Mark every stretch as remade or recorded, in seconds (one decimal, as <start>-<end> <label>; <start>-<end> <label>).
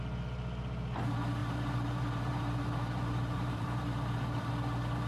0.0-1.4 recorded; 1.4-4.5 remade; 4.5-5.1 recorded